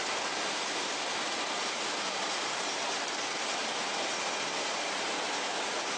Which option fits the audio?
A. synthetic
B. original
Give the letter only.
A